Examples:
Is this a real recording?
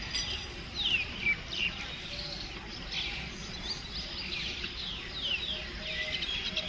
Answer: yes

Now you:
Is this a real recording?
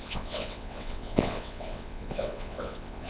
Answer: no